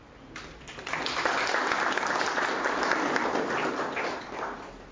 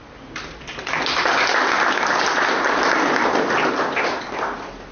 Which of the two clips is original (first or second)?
second